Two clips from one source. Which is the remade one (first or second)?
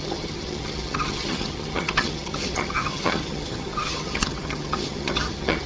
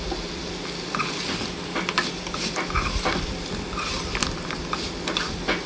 first